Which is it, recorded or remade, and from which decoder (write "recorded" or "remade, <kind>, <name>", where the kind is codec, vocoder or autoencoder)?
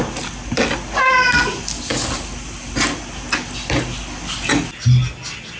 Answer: recorded